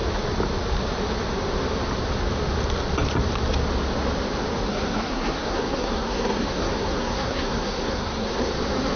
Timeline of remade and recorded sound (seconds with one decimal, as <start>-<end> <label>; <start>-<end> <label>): 0.0-4.7 recorded; 4.7-8.5 remade; 8.5-9.0 recorded